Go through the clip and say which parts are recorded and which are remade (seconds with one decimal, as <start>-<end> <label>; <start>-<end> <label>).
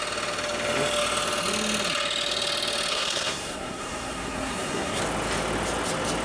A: 0.0-2.9 recorded; 2.9-5.0 remade; 5.0-6.2 recorded